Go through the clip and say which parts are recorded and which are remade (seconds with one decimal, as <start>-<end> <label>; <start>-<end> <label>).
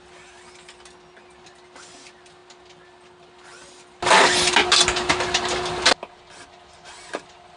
0.0-7.6 recorded